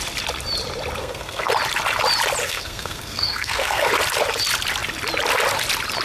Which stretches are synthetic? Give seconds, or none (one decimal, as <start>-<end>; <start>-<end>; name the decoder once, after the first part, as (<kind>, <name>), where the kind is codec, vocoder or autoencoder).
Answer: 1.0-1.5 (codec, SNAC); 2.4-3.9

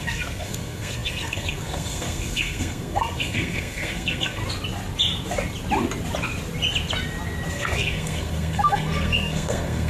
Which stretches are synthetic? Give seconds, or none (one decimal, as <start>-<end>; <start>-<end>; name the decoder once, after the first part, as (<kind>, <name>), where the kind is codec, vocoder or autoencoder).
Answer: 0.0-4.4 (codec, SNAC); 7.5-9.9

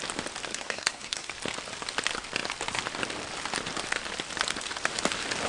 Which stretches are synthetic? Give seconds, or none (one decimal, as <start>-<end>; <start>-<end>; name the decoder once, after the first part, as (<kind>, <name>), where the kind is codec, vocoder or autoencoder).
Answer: 0.5-1.3 (codec, SNAC)

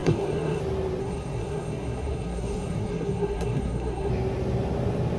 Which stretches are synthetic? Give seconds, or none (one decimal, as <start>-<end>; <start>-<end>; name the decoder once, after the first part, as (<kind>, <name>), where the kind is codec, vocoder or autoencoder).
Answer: 0.0-0.6 (codec, SNAC); 1.0-4.1